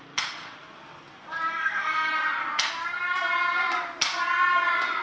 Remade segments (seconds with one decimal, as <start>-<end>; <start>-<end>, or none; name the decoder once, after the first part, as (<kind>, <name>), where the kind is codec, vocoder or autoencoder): 1.5-2.1 (codec, SNAC)